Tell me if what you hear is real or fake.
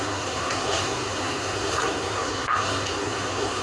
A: fake